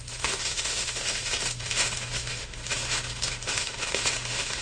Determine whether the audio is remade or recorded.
remade